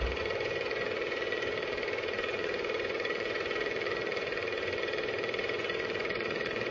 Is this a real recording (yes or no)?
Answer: no